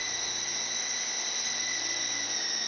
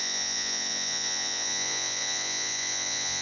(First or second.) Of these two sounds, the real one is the first